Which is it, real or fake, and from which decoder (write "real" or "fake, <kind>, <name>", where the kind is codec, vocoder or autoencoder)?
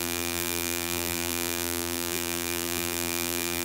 fake, vocoder, BigVGAN v2